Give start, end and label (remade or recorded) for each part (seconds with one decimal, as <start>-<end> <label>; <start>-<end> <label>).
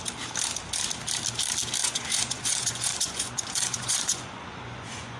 0.0-1.8 recorded; 1.8-5.2 remade